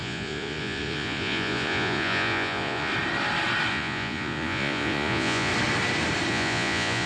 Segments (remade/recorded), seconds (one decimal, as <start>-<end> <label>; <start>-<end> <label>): 0.0-2.9 remade; 2.9-3.7 recorded; 3.7-5.5 remade; 5.5-6.3 recorded; 6.3-7.1 remade